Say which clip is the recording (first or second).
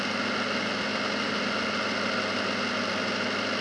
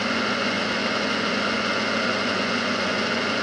first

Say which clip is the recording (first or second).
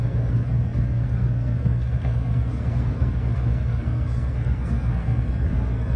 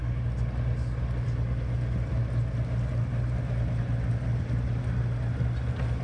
second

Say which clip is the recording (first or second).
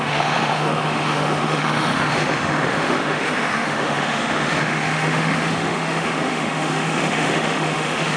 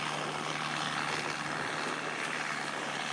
second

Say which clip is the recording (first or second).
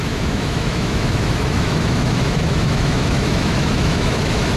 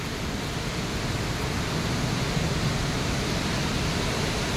second